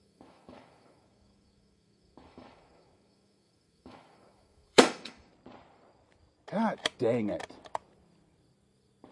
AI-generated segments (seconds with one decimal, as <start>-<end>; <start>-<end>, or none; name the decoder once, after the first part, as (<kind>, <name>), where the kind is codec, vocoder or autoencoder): 0.0-5.3 (autoencoder, DAC-VAE)